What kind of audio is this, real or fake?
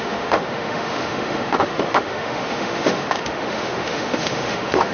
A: fake